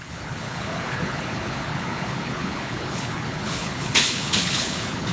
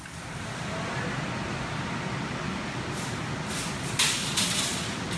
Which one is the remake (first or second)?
first